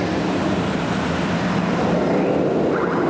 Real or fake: real